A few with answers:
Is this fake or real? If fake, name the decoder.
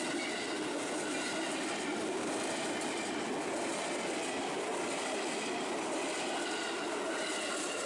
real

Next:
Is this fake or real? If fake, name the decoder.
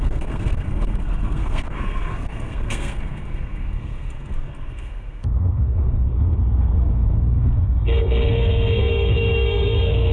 fake, codec, SNAC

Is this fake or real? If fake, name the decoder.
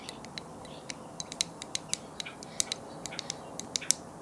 real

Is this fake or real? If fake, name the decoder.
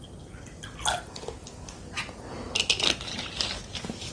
real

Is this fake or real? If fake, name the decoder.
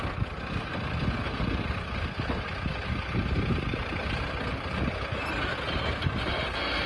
real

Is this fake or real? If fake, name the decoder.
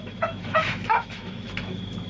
fake, autoencoder, DAC-VAE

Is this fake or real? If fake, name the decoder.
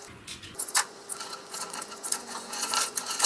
fake, vocoder, Vocos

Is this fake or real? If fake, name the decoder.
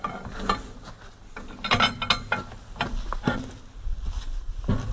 real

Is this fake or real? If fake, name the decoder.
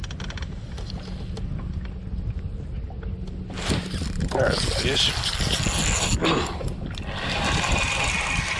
real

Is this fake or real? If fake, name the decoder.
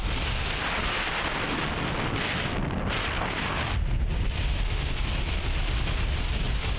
real